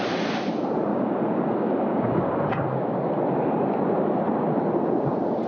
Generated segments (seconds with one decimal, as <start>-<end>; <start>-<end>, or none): 0.9-3.1